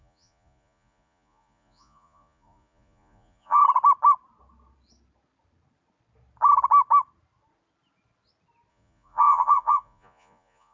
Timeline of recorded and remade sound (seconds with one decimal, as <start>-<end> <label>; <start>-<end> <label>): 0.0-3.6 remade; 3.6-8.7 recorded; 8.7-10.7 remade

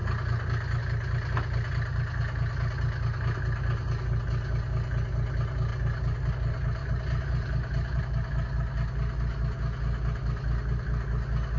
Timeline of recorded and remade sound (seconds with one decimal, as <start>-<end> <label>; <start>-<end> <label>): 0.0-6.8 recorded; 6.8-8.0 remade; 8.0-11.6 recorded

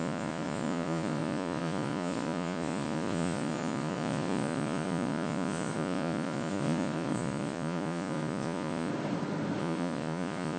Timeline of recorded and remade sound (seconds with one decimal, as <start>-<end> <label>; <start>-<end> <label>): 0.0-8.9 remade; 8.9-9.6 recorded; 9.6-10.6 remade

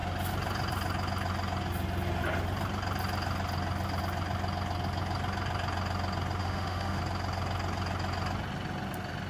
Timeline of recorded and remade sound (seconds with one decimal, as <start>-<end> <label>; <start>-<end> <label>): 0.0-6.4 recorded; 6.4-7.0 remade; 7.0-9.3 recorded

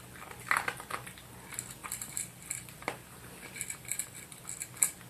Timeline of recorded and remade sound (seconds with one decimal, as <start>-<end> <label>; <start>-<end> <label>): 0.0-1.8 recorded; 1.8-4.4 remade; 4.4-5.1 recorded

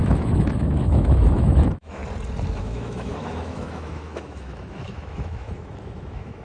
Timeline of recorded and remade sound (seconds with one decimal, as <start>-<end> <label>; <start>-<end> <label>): 0.0-2.0 remade; 2.0-2.6 recorded; 2.6-6.4 remade